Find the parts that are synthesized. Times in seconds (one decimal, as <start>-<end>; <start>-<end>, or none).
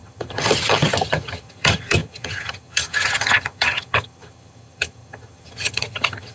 0.0-6.3